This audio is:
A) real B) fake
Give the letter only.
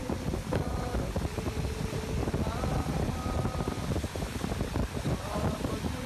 A